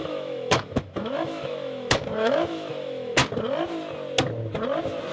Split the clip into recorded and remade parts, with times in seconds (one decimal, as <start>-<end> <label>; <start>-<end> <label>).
0.0-3.2 remade; 3.2-5.1 recorded